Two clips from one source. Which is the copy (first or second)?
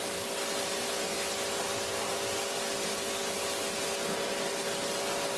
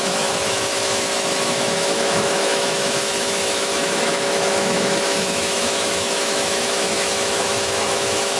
second